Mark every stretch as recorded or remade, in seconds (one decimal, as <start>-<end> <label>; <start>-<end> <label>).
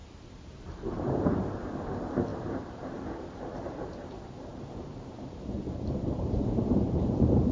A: 0.0-7.5 remade